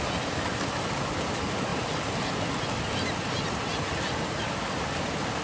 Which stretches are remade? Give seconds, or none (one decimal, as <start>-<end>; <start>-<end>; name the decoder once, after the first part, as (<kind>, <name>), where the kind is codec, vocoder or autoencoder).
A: 0.0-1.7 (vocoder, BigVGAN v2); 4.4-5.4